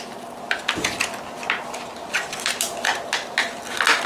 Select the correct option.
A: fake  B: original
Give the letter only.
B